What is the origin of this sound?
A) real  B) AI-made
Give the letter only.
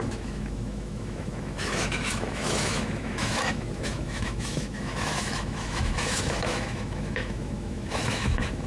B